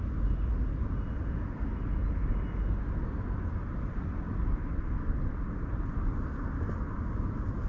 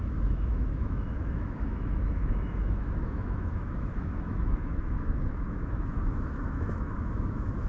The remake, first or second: second